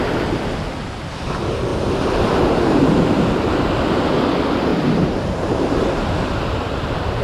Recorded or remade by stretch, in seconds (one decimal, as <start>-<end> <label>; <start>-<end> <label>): 0.0-1.7 recorded; 1.7-3.6 remade; 3.6-4.7 recorded; 4.7-6.3 remade; 6.3-7.2 recorded